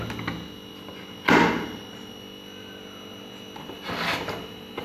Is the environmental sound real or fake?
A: real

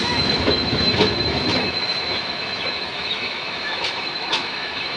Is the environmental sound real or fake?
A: fake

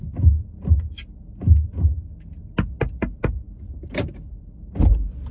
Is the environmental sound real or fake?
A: real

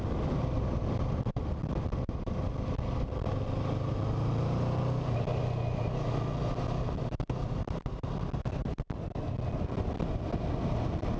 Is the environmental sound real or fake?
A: real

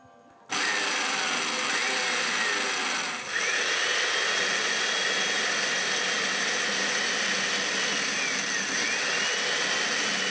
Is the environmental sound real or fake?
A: real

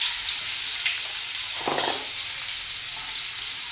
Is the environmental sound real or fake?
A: real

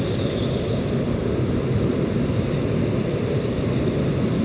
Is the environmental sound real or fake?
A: real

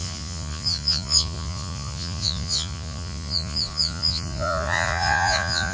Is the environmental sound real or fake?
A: fake